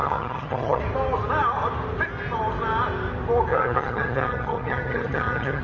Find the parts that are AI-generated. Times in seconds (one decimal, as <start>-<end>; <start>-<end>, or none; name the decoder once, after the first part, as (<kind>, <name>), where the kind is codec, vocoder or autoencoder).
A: 0.0-0.8 (vocoder, HiFi-GAN); 3.5-5.6